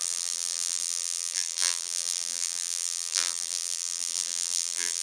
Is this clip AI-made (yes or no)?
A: yes